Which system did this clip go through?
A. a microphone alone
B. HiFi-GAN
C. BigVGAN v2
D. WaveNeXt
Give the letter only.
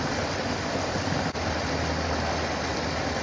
A